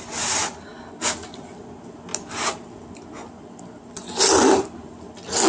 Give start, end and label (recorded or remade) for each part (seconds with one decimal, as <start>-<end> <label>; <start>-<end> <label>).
0.0-5.5 recorded